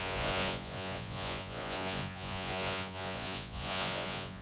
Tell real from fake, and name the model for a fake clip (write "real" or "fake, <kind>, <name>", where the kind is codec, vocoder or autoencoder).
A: fake, vocoder, Vocos